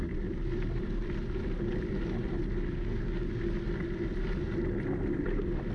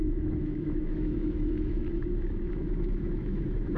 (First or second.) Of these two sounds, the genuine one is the first